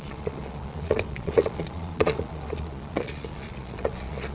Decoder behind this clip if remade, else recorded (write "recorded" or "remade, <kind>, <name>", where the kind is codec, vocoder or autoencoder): remade, vocoder, Vocos